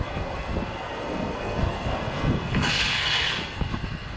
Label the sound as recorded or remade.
remade